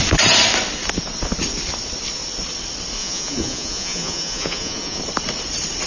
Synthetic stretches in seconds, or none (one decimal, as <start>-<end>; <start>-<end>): 3.0-5.0